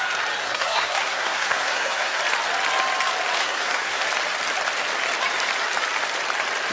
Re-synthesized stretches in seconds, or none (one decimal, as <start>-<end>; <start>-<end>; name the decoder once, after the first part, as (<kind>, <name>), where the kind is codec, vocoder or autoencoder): 0.4-2.2 (codec, SNAC); 3.4-4.0

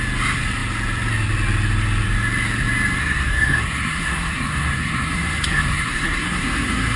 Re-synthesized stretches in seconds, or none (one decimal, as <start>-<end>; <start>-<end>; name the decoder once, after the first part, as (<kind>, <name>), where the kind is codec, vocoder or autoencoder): 3.0-7.0 (codec, SNAC)

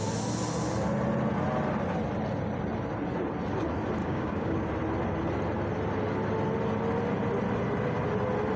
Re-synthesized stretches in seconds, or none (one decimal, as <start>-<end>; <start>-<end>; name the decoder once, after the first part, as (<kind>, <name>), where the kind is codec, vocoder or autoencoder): 4.0-4.6 (codec, DAC)